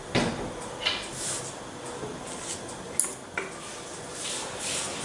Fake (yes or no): no